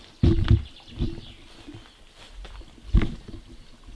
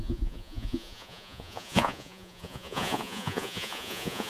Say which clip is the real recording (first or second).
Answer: first